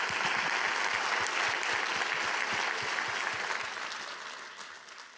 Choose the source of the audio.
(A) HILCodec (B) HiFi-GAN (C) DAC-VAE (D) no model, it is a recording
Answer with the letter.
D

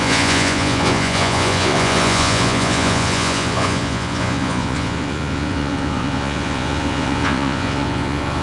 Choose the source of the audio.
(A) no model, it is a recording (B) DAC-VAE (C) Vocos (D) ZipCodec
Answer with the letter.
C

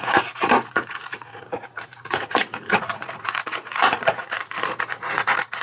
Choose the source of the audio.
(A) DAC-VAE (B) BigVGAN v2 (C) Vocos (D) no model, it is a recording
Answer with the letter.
C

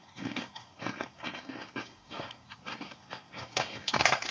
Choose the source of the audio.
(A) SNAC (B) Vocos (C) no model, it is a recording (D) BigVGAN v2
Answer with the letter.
A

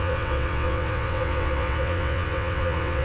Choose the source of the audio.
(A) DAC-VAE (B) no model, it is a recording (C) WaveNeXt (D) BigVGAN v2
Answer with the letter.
C